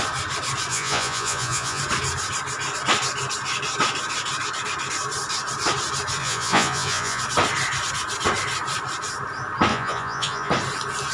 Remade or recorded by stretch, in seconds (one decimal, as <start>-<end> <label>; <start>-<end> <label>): 0.0-0.7 recorded; 0.7-1.8 remade; 1.8-6.2 recorded; 6.2-7.2 remade; 7.2-9.7 recorded; 9.7-10.5 remade; 10.5-11.1 recorded